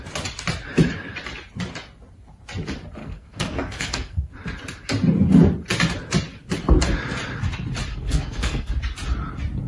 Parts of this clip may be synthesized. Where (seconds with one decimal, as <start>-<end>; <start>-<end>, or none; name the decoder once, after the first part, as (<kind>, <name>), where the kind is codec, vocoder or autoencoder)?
3.0-4.3 (codec, SNAC); 7.9-8.7